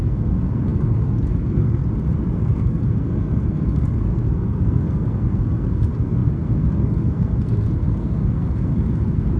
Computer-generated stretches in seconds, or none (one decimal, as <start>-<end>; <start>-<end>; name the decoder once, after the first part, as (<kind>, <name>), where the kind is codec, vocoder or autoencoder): 0.0-1.8 (codec, SNAC); 2.3-9.4